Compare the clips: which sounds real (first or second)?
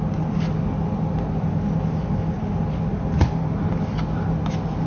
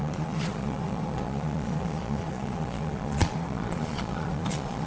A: first